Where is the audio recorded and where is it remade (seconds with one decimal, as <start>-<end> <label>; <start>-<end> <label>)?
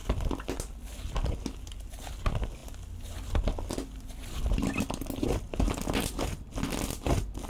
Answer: 0.0-7.5 recorded